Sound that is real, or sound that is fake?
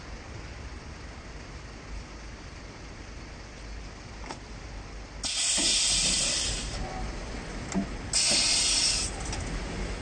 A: real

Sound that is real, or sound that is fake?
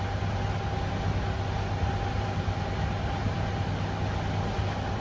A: real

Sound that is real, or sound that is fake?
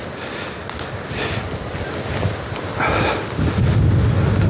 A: real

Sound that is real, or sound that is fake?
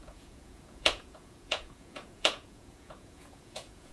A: fake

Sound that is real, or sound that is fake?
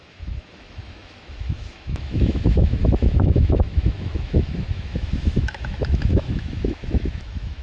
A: fake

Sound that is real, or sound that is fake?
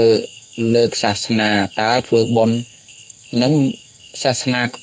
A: fake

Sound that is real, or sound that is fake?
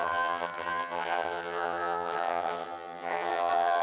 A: fake